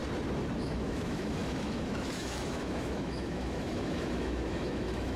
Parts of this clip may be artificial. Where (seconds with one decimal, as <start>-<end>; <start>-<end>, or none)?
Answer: 0.6-5.2